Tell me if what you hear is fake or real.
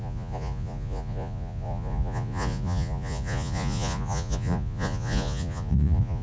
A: fake